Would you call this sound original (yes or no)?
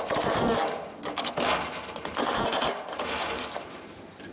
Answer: yes